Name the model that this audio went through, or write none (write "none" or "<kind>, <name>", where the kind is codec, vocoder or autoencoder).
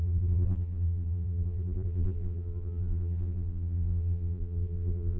vocoder, BigVGAN v2